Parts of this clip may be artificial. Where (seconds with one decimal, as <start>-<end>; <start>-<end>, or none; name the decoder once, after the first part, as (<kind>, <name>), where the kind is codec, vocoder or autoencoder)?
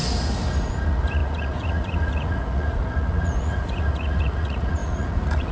0.7-5.5 (vocoder, Vocos)